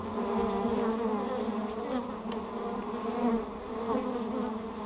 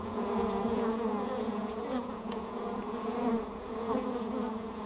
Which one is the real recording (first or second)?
first